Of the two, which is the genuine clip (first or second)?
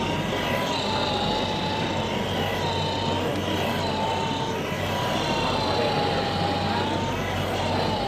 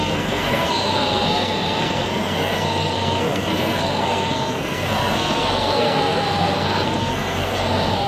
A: first